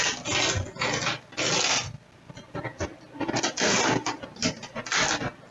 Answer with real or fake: real